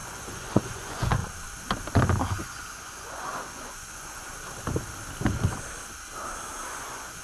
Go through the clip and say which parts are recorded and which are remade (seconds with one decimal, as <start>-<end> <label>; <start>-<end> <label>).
0.0-1.2 remade; 1.2-2.4 recorded; 2.4-4.3 remade; 4.3-6.7 recorded; 6.7-7.2 remade

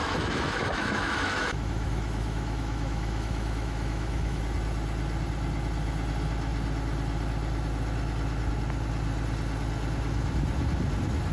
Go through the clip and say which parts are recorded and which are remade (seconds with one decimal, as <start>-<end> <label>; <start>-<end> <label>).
0.0-4.4 remade; 4.4-11.3 recorded

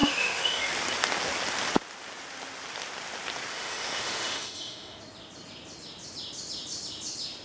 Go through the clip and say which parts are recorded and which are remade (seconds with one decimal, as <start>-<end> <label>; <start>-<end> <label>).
0.0-0.7 remade; 0.7-3.5 recorded; 3.5-5.0 remade; 5.0-7.4 recorded

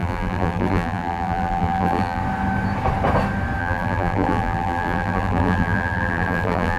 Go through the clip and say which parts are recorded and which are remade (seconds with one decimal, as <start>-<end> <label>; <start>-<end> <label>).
0.0-2.2 remade; 2.2-3.6 recorded; 3.6-6.8 remade

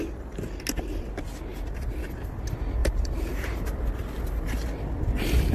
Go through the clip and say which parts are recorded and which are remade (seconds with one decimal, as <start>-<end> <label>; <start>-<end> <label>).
0.0-2.8 recorded; 2.8-4.2 remade; 4.2-5.5 recorded

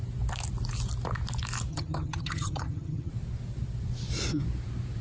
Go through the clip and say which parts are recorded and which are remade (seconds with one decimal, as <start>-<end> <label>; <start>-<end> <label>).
0.0-1.7 recorded; 1.7-3.1 remade; 3.1-5.0 recorded